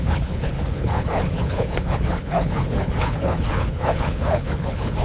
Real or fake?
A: fake